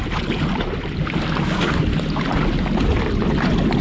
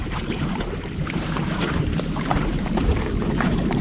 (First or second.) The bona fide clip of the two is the first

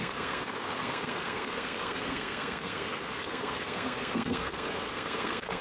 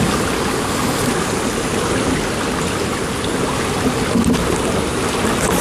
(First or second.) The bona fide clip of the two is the second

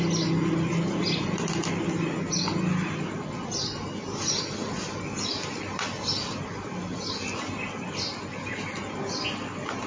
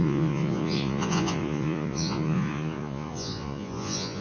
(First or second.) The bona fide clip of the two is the first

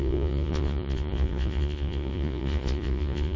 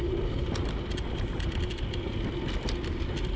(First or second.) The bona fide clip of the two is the second